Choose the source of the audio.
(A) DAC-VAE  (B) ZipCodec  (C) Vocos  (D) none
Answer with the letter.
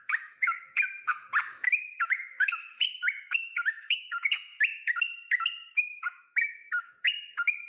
A